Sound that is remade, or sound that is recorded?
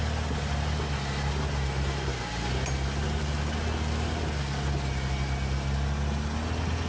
recorded